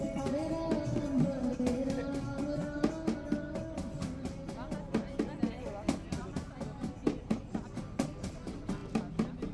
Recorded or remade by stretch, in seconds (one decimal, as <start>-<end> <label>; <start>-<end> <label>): 0.0-9.5 recorded